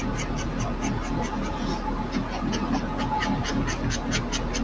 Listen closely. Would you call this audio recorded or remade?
recorded